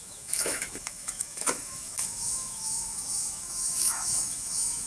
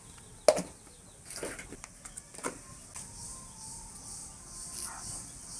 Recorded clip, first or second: second